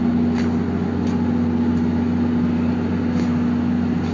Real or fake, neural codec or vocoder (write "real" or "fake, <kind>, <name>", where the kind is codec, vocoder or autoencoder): real